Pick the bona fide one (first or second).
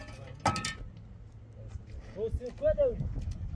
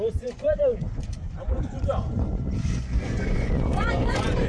first